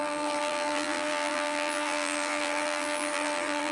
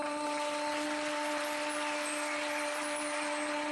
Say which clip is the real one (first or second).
second